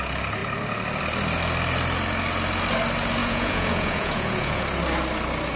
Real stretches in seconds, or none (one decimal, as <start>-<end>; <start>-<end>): 0.0-3.2; 4.6-5.6